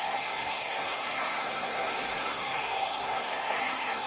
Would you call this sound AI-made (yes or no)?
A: yes